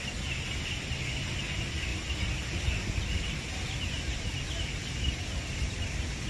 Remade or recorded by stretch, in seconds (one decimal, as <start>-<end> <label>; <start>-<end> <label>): 0.0-6.3 recorded